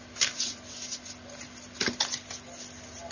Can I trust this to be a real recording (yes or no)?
yes